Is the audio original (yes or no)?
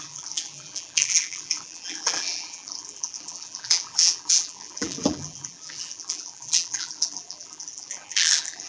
no